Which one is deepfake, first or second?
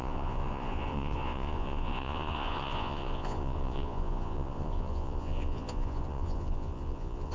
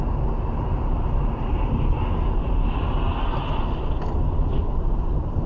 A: first